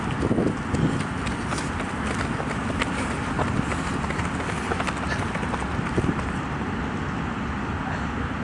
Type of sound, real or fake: real